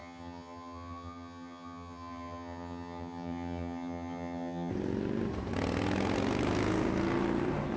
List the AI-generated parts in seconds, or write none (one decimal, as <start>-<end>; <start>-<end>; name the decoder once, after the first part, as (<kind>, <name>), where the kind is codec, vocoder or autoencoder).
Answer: 0.0-4.7 (vocoder, HiFi-GAN)

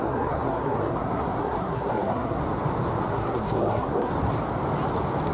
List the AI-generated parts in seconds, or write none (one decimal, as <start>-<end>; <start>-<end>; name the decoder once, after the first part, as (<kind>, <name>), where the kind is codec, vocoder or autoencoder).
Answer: 0.0-2.4 (codec, SNAC); 3.1-4.1

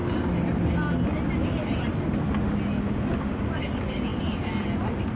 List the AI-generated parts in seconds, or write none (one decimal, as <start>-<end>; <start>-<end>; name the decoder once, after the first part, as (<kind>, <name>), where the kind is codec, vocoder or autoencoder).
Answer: none

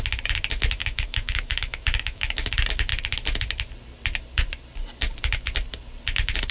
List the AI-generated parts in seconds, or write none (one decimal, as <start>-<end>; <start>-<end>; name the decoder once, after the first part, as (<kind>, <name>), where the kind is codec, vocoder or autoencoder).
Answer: 0.8-2.5 (autoencoder, DAC-VAE)